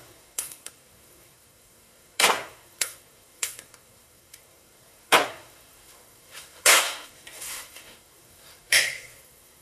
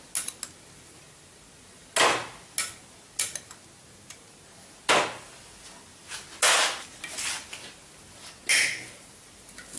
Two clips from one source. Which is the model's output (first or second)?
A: first